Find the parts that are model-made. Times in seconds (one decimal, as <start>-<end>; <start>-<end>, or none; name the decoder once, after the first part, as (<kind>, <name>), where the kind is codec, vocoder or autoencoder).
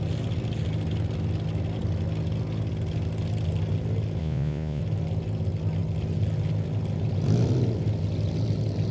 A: 4.2-4.8 (vocoder, Vocos)